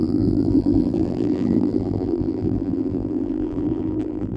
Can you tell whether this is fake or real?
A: fake